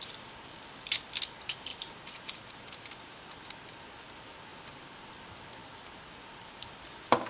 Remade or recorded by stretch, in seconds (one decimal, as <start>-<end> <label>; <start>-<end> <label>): 0.0-1.7 recorded; 1.7-3.9 remade; 3.9-4.5 recorded; 4.5-5.1 remade; 5.1-5.6 recorded; 5.6-6.7 remade; 6.7-7.3 recorded